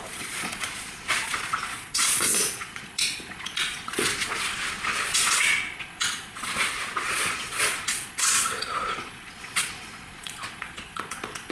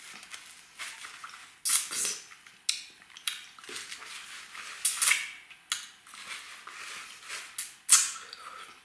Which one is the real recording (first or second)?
second